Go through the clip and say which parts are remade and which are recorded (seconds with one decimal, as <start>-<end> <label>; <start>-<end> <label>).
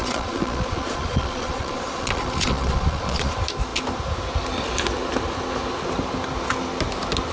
0.0-3.3 remade; 3.3-7.3 recorded